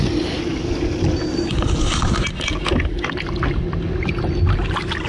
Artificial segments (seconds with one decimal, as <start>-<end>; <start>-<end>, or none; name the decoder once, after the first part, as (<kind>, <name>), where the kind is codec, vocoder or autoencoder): none